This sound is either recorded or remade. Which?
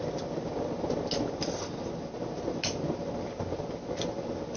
recorded